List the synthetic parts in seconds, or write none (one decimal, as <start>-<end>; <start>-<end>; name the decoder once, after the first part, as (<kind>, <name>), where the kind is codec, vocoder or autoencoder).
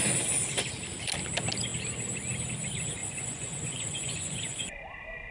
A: 3.0-4.8 (vocoder, Vocos)